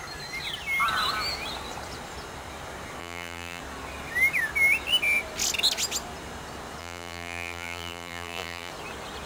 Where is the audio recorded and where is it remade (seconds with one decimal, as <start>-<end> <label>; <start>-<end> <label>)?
0.0-3.0 recorded; 3.0-3.6 remade; 3.6-6.8 recorded; 6.8-8.7 remade; 8.7-9.3 recorded